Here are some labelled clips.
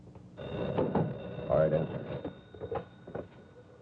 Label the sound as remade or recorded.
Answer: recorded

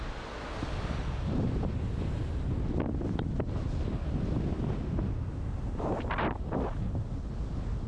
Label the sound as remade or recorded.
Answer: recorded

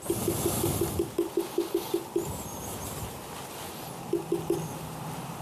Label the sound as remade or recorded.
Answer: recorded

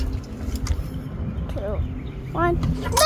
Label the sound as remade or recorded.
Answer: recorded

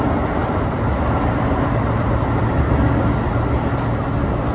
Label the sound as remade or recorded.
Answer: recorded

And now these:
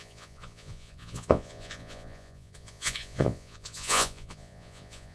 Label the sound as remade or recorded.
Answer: remade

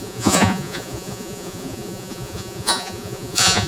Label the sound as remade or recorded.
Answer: remade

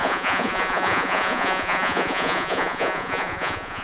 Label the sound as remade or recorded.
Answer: remade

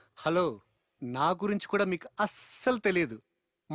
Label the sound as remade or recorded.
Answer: recorded